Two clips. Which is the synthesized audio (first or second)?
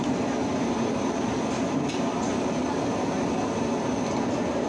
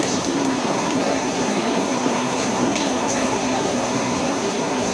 second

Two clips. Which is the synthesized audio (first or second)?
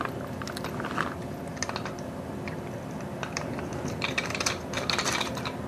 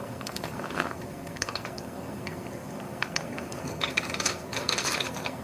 second